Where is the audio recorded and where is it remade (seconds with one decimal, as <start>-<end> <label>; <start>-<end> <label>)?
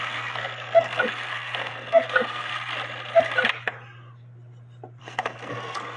0.0-2.5 remade; 2.5-5.0 recorded; 5.0-6.0 remade